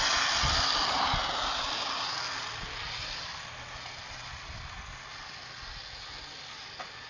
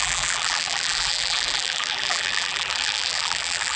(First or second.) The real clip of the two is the first